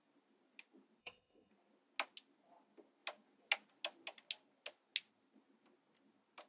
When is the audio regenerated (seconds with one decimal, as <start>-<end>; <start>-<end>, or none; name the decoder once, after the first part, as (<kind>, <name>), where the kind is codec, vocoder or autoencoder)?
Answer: 1.0-1.5 (codec, SNAC)